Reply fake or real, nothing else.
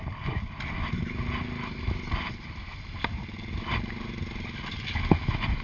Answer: real